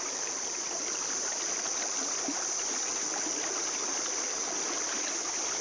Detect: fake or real real